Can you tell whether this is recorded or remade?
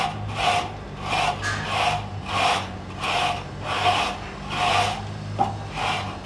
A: recorded